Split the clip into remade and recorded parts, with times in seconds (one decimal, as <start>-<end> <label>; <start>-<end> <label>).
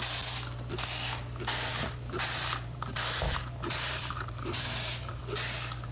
0.0-1.7 recorded; 1.7-5.2 remade; 5.2-5.9 recorded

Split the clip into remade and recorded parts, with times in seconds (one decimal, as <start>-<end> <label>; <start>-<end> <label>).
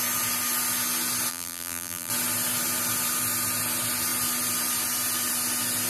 0.0-1.3 recorded; 1.3-2.1 remade; 2.1-5.9 recorded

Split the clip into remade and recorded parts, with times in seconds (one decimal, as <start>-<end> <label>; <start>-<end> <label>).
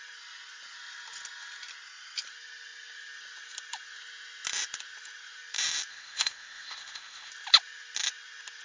0.0-5.9 recorded; 5.9-7.3 remade; 7.3-8.6 recorded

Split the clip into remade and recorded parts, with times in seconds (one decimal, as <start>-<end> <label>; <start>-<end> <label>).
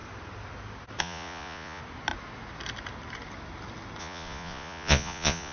0.0-1.0 recorded; 1.0-1.8 remade; 1.8-4.0 recorded; 4.0-5.5 remade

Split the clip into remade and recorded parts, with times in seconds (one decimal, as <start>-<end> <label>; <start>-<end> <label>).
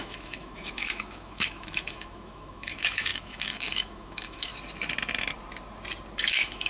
0.0-4.5 remade; 4.5-6.2 recorded; 6.2-6.7 remade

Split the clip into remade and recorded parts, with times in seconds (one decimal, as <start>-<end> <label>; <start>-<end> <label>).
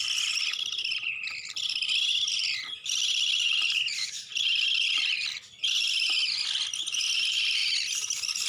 0.0-8.5 recorded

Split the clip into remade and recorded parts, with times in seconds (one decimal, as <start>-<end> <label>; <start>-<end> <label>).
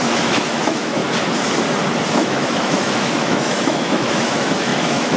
0.0-1.0 remade; 1.0-2.1 recorded; 2.1-5.2 remade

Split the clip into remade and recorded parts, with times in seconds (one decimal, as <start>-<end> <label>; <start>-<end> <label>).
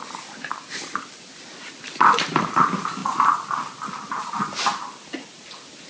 0.0-5.9 recorded